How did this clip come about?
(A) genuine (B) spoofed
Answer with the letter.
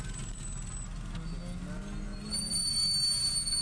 A